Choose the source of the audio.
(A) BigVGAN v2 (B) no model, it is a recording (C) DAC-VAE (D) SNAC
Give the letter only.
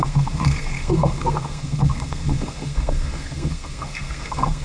D